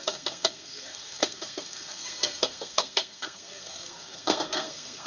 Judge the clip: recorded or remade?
remade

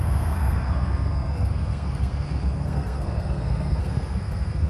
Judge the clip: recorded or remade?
remade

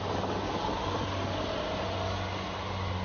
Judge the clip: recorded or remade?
recorded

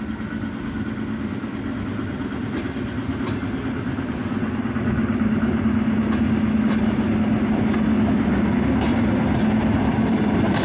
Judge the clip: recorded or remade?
recorded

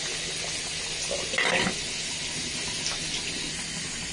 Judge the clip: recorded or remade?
recorded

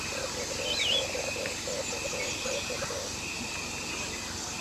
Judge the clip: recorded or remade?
recorded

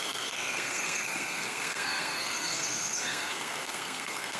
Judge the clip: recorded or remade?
remade